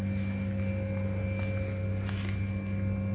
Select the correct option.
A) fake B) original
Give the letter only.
B